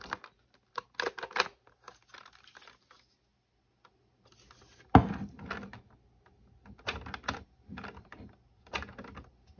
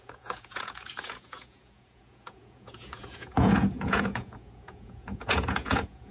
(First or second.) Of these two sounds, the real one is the first